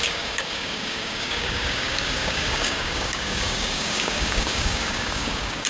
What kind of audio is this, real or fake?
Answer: fake